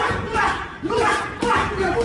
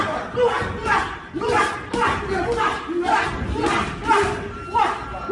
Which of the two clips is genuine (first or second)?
second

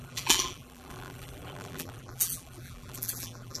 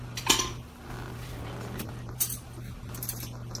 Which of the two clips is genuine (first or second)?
second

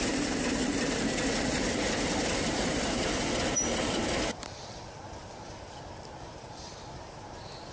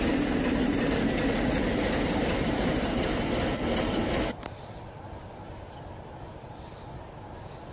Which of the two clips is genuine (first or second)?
second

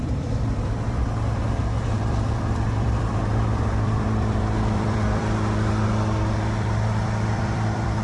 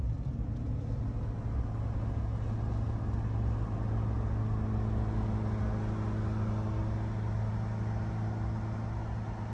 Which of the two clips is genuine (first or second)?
second